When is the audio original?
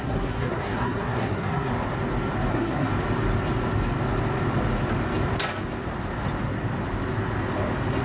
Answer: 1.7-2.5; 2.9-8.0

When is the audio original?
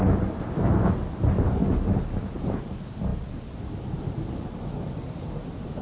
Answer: 0.0-5.8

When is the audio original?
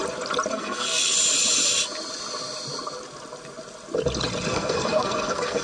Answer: 0.0-0.5; 1.1-4.5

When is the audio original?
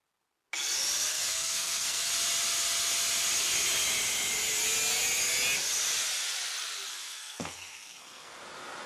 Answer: 0.0-1.1; 2.1-6.9; 8.4-8.9